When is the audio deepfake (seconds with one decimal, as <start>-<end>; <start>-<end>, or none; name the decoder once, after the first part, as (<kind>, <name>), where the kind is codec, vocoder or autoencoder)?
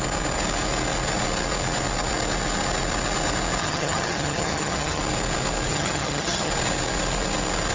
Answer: 3.6-5.0 (vocoder, HiFi-GAN); 5.7-6.5